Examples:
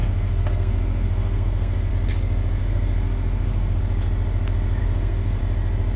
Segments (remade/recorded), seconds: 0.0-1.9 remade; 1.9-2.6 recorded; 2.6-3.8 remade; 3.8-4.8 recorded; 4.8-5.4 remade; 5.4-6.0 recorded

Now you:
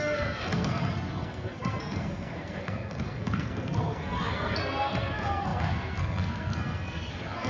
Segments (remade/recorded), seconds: 0.0-7.5 remade